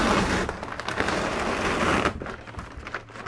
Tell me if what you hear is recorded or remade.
recorded